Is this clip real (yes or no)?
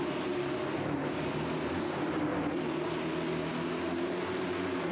yes